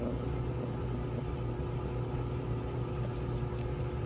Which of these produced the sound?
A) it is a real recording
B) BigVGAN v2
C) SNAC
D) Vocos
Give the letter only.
A